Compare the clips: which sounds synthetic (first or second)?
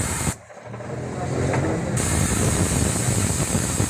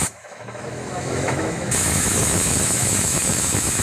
second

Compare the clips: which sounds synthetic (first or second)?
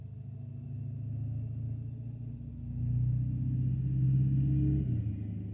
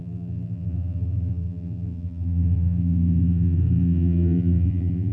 second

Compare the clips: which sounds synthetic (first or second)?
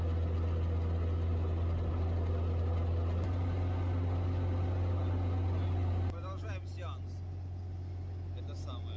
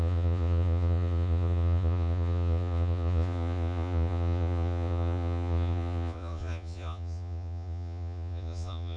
second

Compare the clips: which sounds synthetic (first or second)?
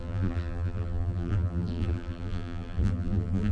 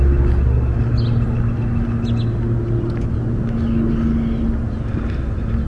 first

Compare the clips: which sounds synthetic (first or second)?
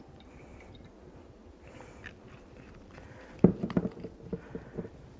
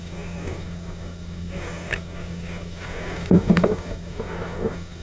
second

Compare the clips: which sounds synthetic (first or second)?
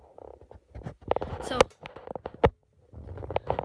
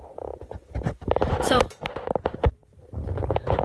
second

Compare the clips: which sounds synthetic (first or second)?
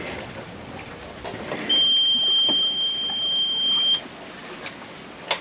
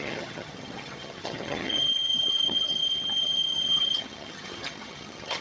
second